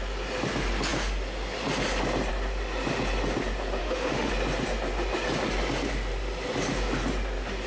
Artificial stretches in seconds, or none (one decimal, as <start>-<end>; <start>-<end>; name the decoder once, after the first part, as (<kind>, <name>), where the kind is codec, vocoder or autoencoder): 3.8-4.3 (autoencoder, DAC-VAE)